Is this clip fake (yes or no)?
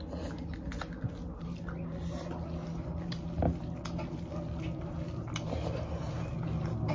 no